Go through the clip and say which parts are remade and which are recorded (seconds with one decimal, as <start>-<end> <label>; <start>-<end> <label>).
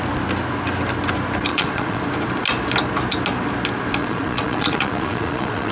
0.0-1.5 recorded; 1.5-2.0 remade; 2.0-4.0 recorded; 4.0-5.7 remade